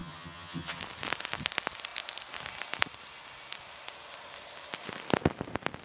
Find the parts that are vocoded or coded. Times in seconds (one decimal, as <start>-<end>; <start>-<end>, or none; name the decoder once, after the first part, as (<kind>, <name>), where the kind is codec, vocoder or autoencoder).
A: 0.0-0.8 (vocoder, HiFi-GAN)